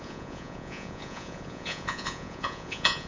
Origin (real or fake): fake